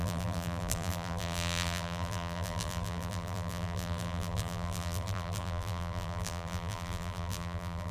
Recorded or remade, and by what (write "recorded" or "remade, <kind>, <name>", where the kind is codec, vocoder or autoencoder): remade, vocoder, BigVGAN v2